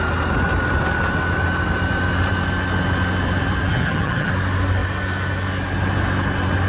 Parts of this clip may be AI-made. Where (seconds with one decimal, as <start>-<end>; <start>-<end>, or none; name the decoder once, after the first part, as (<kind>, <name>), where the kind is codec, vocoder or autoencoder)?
3.7-4.3 (vocoder, HiFi-GAN)